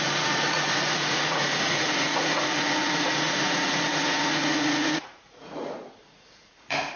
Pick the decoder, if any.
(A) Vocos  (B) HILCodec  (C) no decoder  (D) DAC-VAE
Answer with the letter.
A